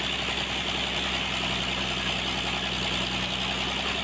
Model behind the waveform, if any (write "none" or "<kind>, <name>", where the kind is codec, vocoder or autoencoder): none